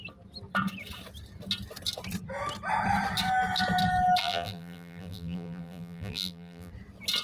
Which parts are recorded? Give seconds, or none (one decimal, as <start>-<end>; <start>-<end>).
0.0-4.2; 6.7-7.2